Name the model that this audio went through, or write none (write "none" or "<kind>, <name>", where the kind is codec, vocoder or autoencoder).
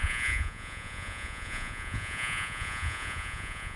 vocoder, Vocos